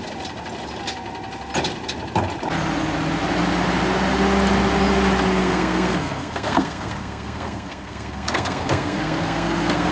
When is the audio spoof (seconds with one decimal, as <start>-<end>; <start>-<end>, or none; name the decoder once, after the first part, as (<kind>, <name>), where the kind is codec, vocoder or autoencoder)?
5.4-9.9 (codec, SNAC)